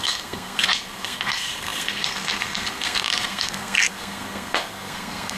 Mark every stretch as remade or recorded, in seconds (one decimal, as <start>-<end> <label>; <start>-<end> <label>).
0.0-5.4 remade